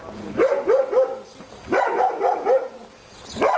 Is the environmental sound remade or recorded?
recorded